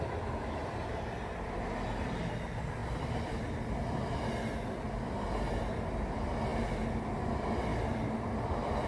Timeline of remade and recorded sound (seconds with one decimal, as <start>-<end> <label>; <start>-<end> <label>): 0.0-2.8 recorded; 2.8-3.5 remade; 3.5-7.7 recorded; 7.7-8.9 remade